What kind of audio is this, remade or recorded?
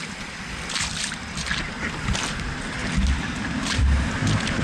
recorded